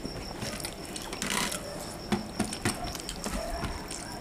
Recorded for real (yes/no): yes